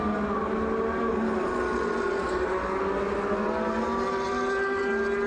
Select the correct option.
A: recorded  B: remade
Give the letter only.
A